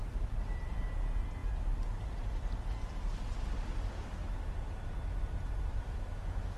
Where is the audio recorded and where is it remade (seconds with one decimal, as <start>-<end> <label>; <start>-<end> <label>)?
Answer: 0.0-5.7 recorded; 5.7-6.6 remade